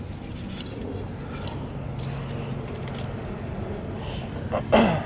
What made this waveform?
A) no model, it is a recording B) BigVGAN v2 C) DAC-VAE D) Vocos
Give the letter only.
A